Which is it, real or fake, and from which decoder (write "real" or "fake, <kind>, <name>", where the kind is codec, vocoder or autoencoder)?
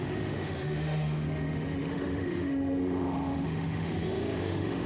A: fake, autoencoder, DAC-VAE